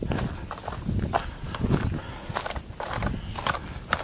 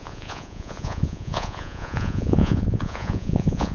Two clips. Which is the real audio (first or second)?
first